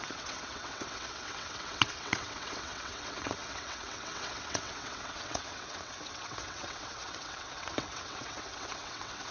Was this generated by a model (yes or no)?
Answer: yes